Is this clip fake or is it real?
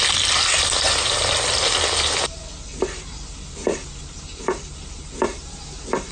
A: real